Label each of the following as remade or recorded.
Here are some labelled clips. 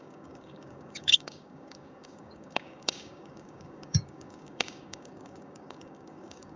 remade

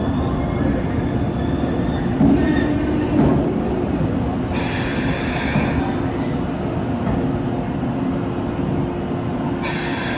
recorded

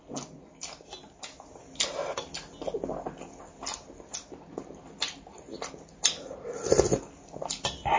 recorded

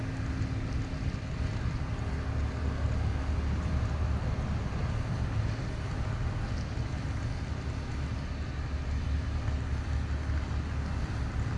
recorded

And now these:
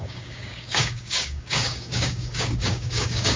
remade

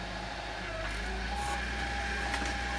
recorded